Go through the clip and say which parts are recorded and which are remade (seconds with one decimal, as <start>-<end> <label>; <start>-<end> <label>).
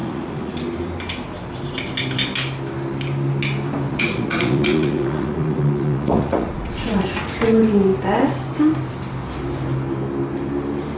0.0-0.5 remade; 0.5-3.9 recorded; 3.9-7.0 remade; 7.0-11.0 recorded